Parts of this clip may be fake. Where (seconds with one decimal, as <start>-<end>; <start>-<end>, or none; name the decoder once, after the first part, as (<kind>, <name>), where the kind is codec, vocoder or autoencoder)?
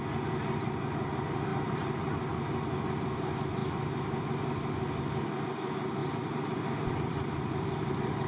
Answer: 1.5-2.1 (vocoder, BigVGAN v2); 6.0-7.8